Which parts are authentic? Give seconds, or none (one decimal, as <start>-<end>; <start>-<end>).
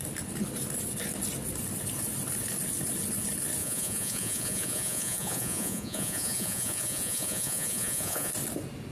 0.0-3.6; 8.3-8.9